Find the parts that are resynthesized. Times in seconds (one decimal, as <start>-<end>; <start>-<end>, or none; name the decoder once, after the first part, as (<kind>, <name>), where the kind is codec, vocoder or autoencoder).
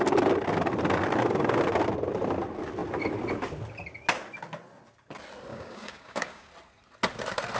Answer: 5.5-6.5 (codec, DAC)